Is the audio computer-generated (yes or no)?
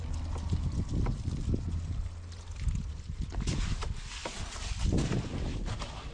no